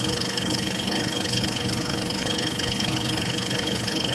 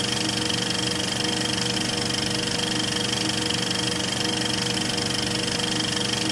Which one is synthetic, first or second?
first